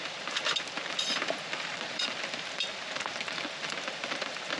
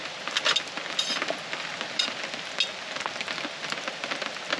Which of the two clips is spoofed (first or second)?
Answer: first